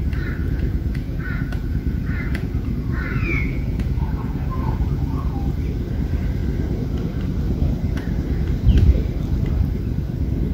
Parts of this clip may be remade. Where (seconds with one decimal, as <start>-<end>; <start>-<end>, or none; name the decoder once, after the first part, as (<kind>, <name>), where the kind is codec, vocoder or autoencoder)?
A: 0.4-5.4 (vocoder, Vocos)